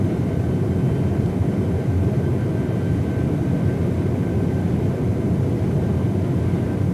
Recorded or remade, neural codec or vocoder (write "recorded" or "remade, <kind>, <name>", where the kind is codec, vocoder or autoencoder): recorded